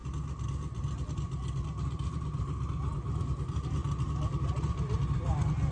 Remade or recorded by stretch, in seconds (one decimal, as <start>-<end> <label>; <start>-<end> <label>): 0.0-5.7 recorded